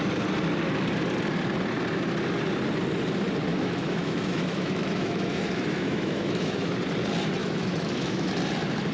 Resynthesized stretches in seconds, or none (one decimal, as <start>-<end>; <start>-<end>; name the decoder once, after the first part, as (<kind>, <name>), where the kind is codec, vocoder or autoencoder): 3.5-6.7 (autoencoder, DAC-VAE); 7.4-8.3